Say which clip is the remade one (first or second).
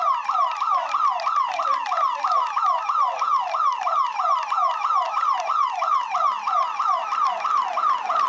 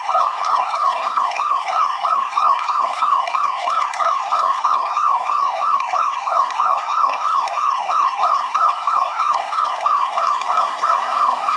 second